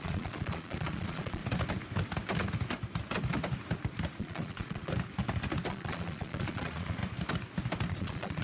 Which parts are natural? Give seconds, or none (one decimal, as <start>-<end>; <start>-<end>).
1.4-4.2; 4.9-5.7; 7.0-7.9